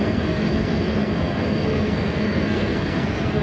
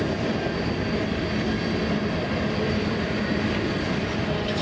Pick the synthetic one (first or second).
first